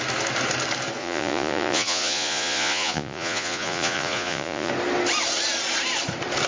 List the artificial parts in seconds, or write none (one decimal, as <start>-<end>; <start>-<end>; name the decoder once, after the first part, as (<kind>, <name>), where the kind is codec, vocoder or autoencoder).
1.0-4.7 (vocoder, Vocos)